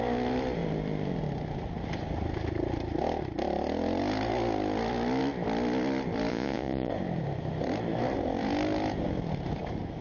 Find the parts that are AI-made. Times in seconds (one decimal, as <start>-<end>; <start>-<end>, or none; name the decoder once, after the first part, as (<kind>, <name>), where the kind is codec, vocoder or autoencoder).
6.3-6.9 (vocoder, Vocos)